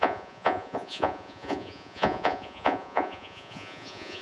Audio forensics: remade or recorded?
remade